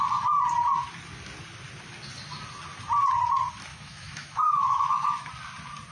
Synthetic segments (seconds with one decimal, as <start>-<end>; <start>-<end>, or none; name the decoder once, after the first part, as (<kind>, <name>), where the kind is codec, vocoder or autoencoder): 3.7-5.3 (autoencoder, DAC-VAE)